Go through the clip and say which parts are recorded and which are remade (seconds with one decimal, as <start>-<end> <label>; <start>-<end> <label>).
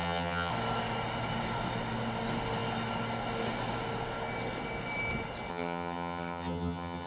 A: 0.0-0.5 remade; 0.5-5.5 recorded; 5.5-7.1 remade